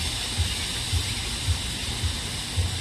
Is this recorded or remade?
recorded